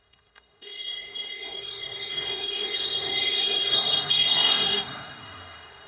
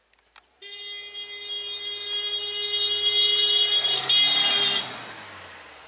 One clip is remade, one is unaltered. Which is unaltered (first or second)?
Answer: second